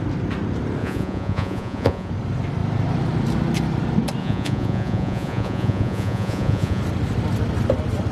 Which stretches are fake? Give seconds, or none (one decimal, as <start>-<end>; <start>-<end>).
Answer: 0.8-2.1; 4.2-6.8